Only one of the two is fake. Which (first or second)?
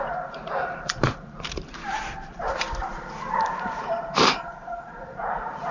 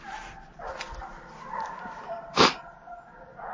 first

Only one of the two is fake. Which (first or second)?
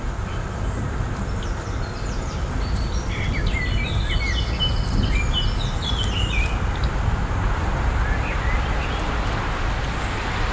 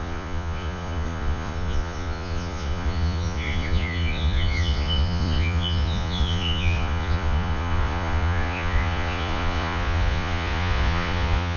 second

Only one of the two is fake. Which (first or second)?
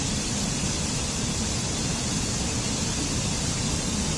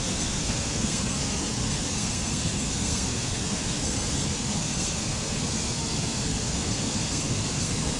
second